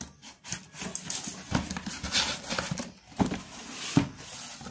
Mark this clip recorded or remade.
recorded